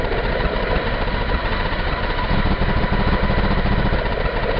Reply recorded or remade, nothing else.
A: recorded